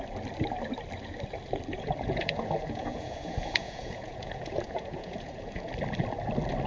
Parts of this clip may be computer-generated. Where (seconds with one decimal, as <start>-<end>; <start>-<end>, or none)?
1.7-5.7